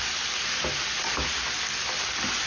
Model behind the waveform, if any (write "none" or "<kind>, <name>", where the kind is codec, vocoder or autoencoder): none